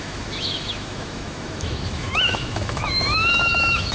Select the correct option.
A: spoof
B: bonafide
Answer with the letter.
A